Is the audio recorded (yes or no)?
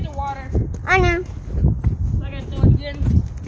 yes